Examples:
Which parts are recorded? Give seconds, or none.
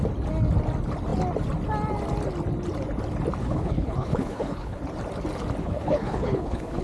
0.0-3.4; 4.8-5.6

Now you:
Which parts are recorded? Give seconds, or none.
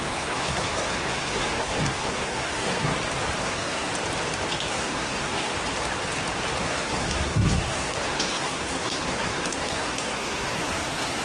2.9-3.4; 3.9-4.7; 5.5-6.6